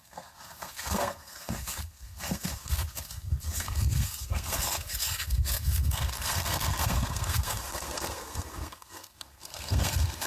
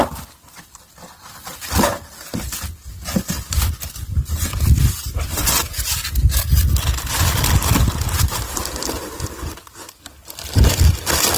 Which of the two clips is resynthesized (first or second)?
first